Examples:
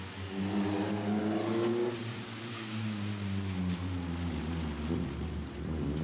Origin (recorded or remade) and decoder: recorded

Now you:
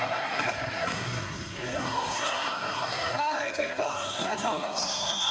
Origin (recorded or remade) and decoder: remade, codec, SNAC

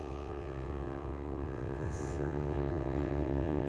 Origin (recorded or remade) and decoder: remade, vocoder, WaveNeXt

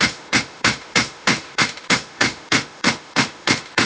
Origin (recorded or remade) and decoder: remade, autoencoder, DAC-VAE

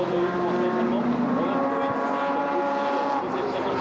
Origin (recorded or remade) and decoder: recorded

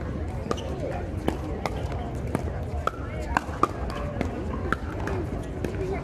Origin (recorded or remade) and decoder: recorded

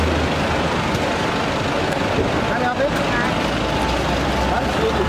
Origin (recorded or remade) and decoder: recorded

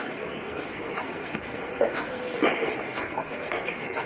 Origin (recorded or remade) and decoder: remade, codec, SNAC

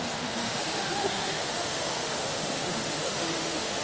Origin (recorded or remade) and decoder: remade, autoencoder, DAC-VAE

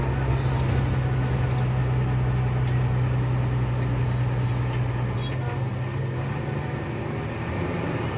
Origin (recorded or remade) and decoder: recorded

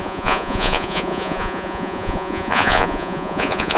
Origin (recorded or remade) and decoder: remade, vocoder, Vocos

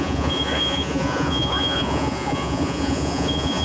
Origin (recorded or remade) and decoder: remade, vocoder, Vocos